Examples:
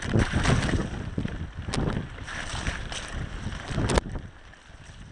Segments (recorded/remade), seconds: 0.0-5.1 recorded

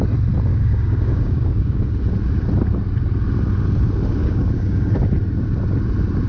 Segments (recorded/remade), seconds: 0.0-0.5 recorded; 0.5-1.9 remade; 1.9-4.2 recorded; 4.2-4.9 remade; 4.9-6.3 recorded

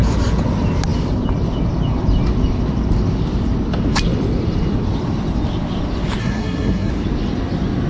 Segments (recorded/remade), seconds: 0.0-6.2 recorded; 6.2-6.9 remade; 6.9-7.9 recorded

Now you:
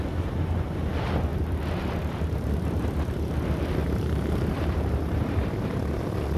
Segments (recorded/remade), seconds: 0.0-1.3 recorded; 1.3-2.5 remade; 2.5-3.8 recorded; 3.8-6.0 remade; 6.0-6.4 recorded

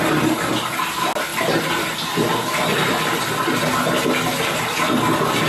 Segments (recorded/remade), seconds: 0.0-5.5 recorded

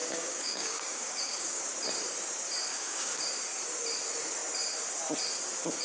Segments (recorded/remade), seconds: 0.0-1.6 remade; 1.6-2.7 recorded; 2.7-3.2 remade; 3.2-5.8 recorded